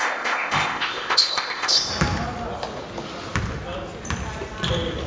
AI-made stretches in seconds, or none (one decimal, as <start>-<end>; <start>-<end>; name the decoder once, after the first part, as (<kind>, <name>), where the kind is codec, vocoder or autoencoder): 0.0-1.9 (codec, ZipCodec)